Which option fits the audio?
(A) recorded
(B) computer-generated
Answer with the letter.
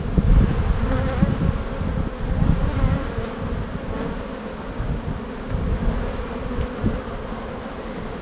A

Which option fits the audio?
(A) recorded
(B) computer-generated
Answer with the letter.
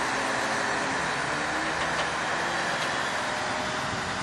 A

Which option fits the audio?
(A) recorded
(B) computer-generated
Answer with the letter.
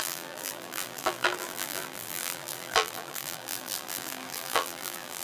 B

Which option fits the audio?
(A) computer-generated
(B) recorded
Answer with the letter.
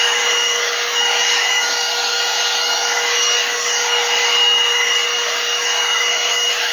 A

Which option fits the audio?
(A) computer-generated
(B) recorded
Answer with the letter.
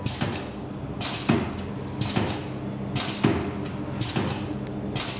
B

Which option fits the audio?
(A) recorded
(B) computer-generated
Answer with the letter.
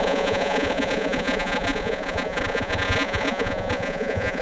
B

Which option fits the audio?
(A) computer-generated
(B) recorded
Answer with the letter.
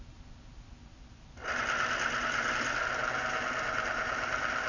B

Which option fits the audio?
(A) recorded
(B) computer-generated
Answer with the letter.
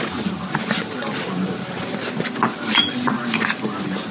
A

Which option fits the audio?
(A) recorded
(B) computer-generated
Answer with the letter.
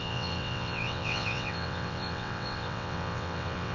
B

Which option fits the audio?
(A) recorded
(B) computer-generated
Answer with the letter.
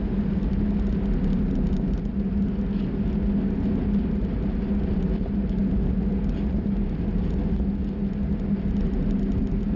A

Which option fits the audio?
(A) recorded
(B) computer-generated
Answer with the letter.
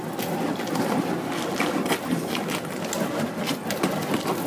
A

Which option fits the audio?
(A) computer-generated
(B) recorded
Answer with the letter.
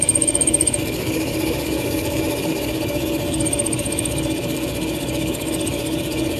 A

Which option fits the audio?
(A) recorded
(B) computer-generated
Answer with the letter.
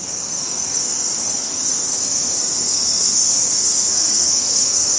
B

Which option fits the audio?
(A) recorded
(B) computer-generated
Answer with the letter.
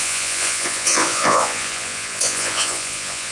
B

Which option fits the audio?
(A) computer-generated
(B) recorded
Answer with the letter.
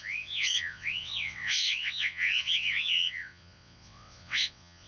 A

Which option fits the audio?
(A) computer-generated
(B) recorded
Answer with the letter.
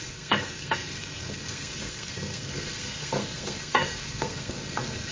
A